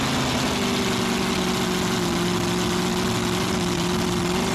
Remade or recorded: recorded